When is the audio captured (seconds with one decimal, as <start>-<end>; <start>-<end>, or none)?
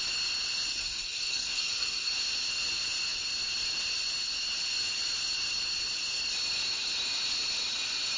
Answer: 0.0-0.7; 2.1-8.2